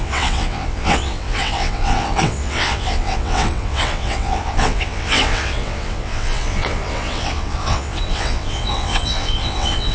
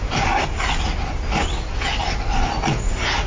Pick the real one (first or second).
second